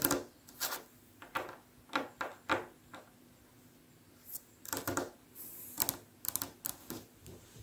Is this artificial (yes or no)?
no